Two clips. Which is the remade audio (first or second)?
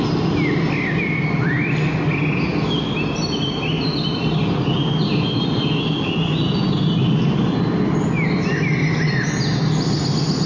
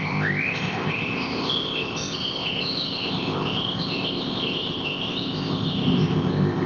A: second